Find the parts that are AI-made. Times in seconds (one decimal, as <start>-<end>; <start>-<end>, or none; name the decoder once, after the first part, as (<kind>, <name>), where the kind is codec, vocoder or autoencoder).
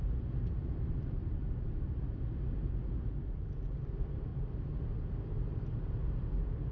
0.0-4.3 (vocoder, BigVGAN v2); 5.1-6.0